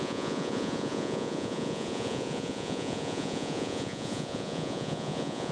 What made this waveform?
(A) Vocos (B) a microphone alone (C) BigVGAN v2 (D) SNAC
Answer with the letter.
A